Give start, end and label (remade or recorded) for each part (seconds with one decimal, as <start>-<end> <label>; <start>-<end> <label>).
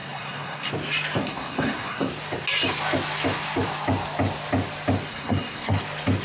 0.0-0.7 remade; 0.7-1.2 recorded; 1.2-2.1 remade; 2.1-5.1 recorded; 5.1-5.8 remade; 5.8-6.2 recorded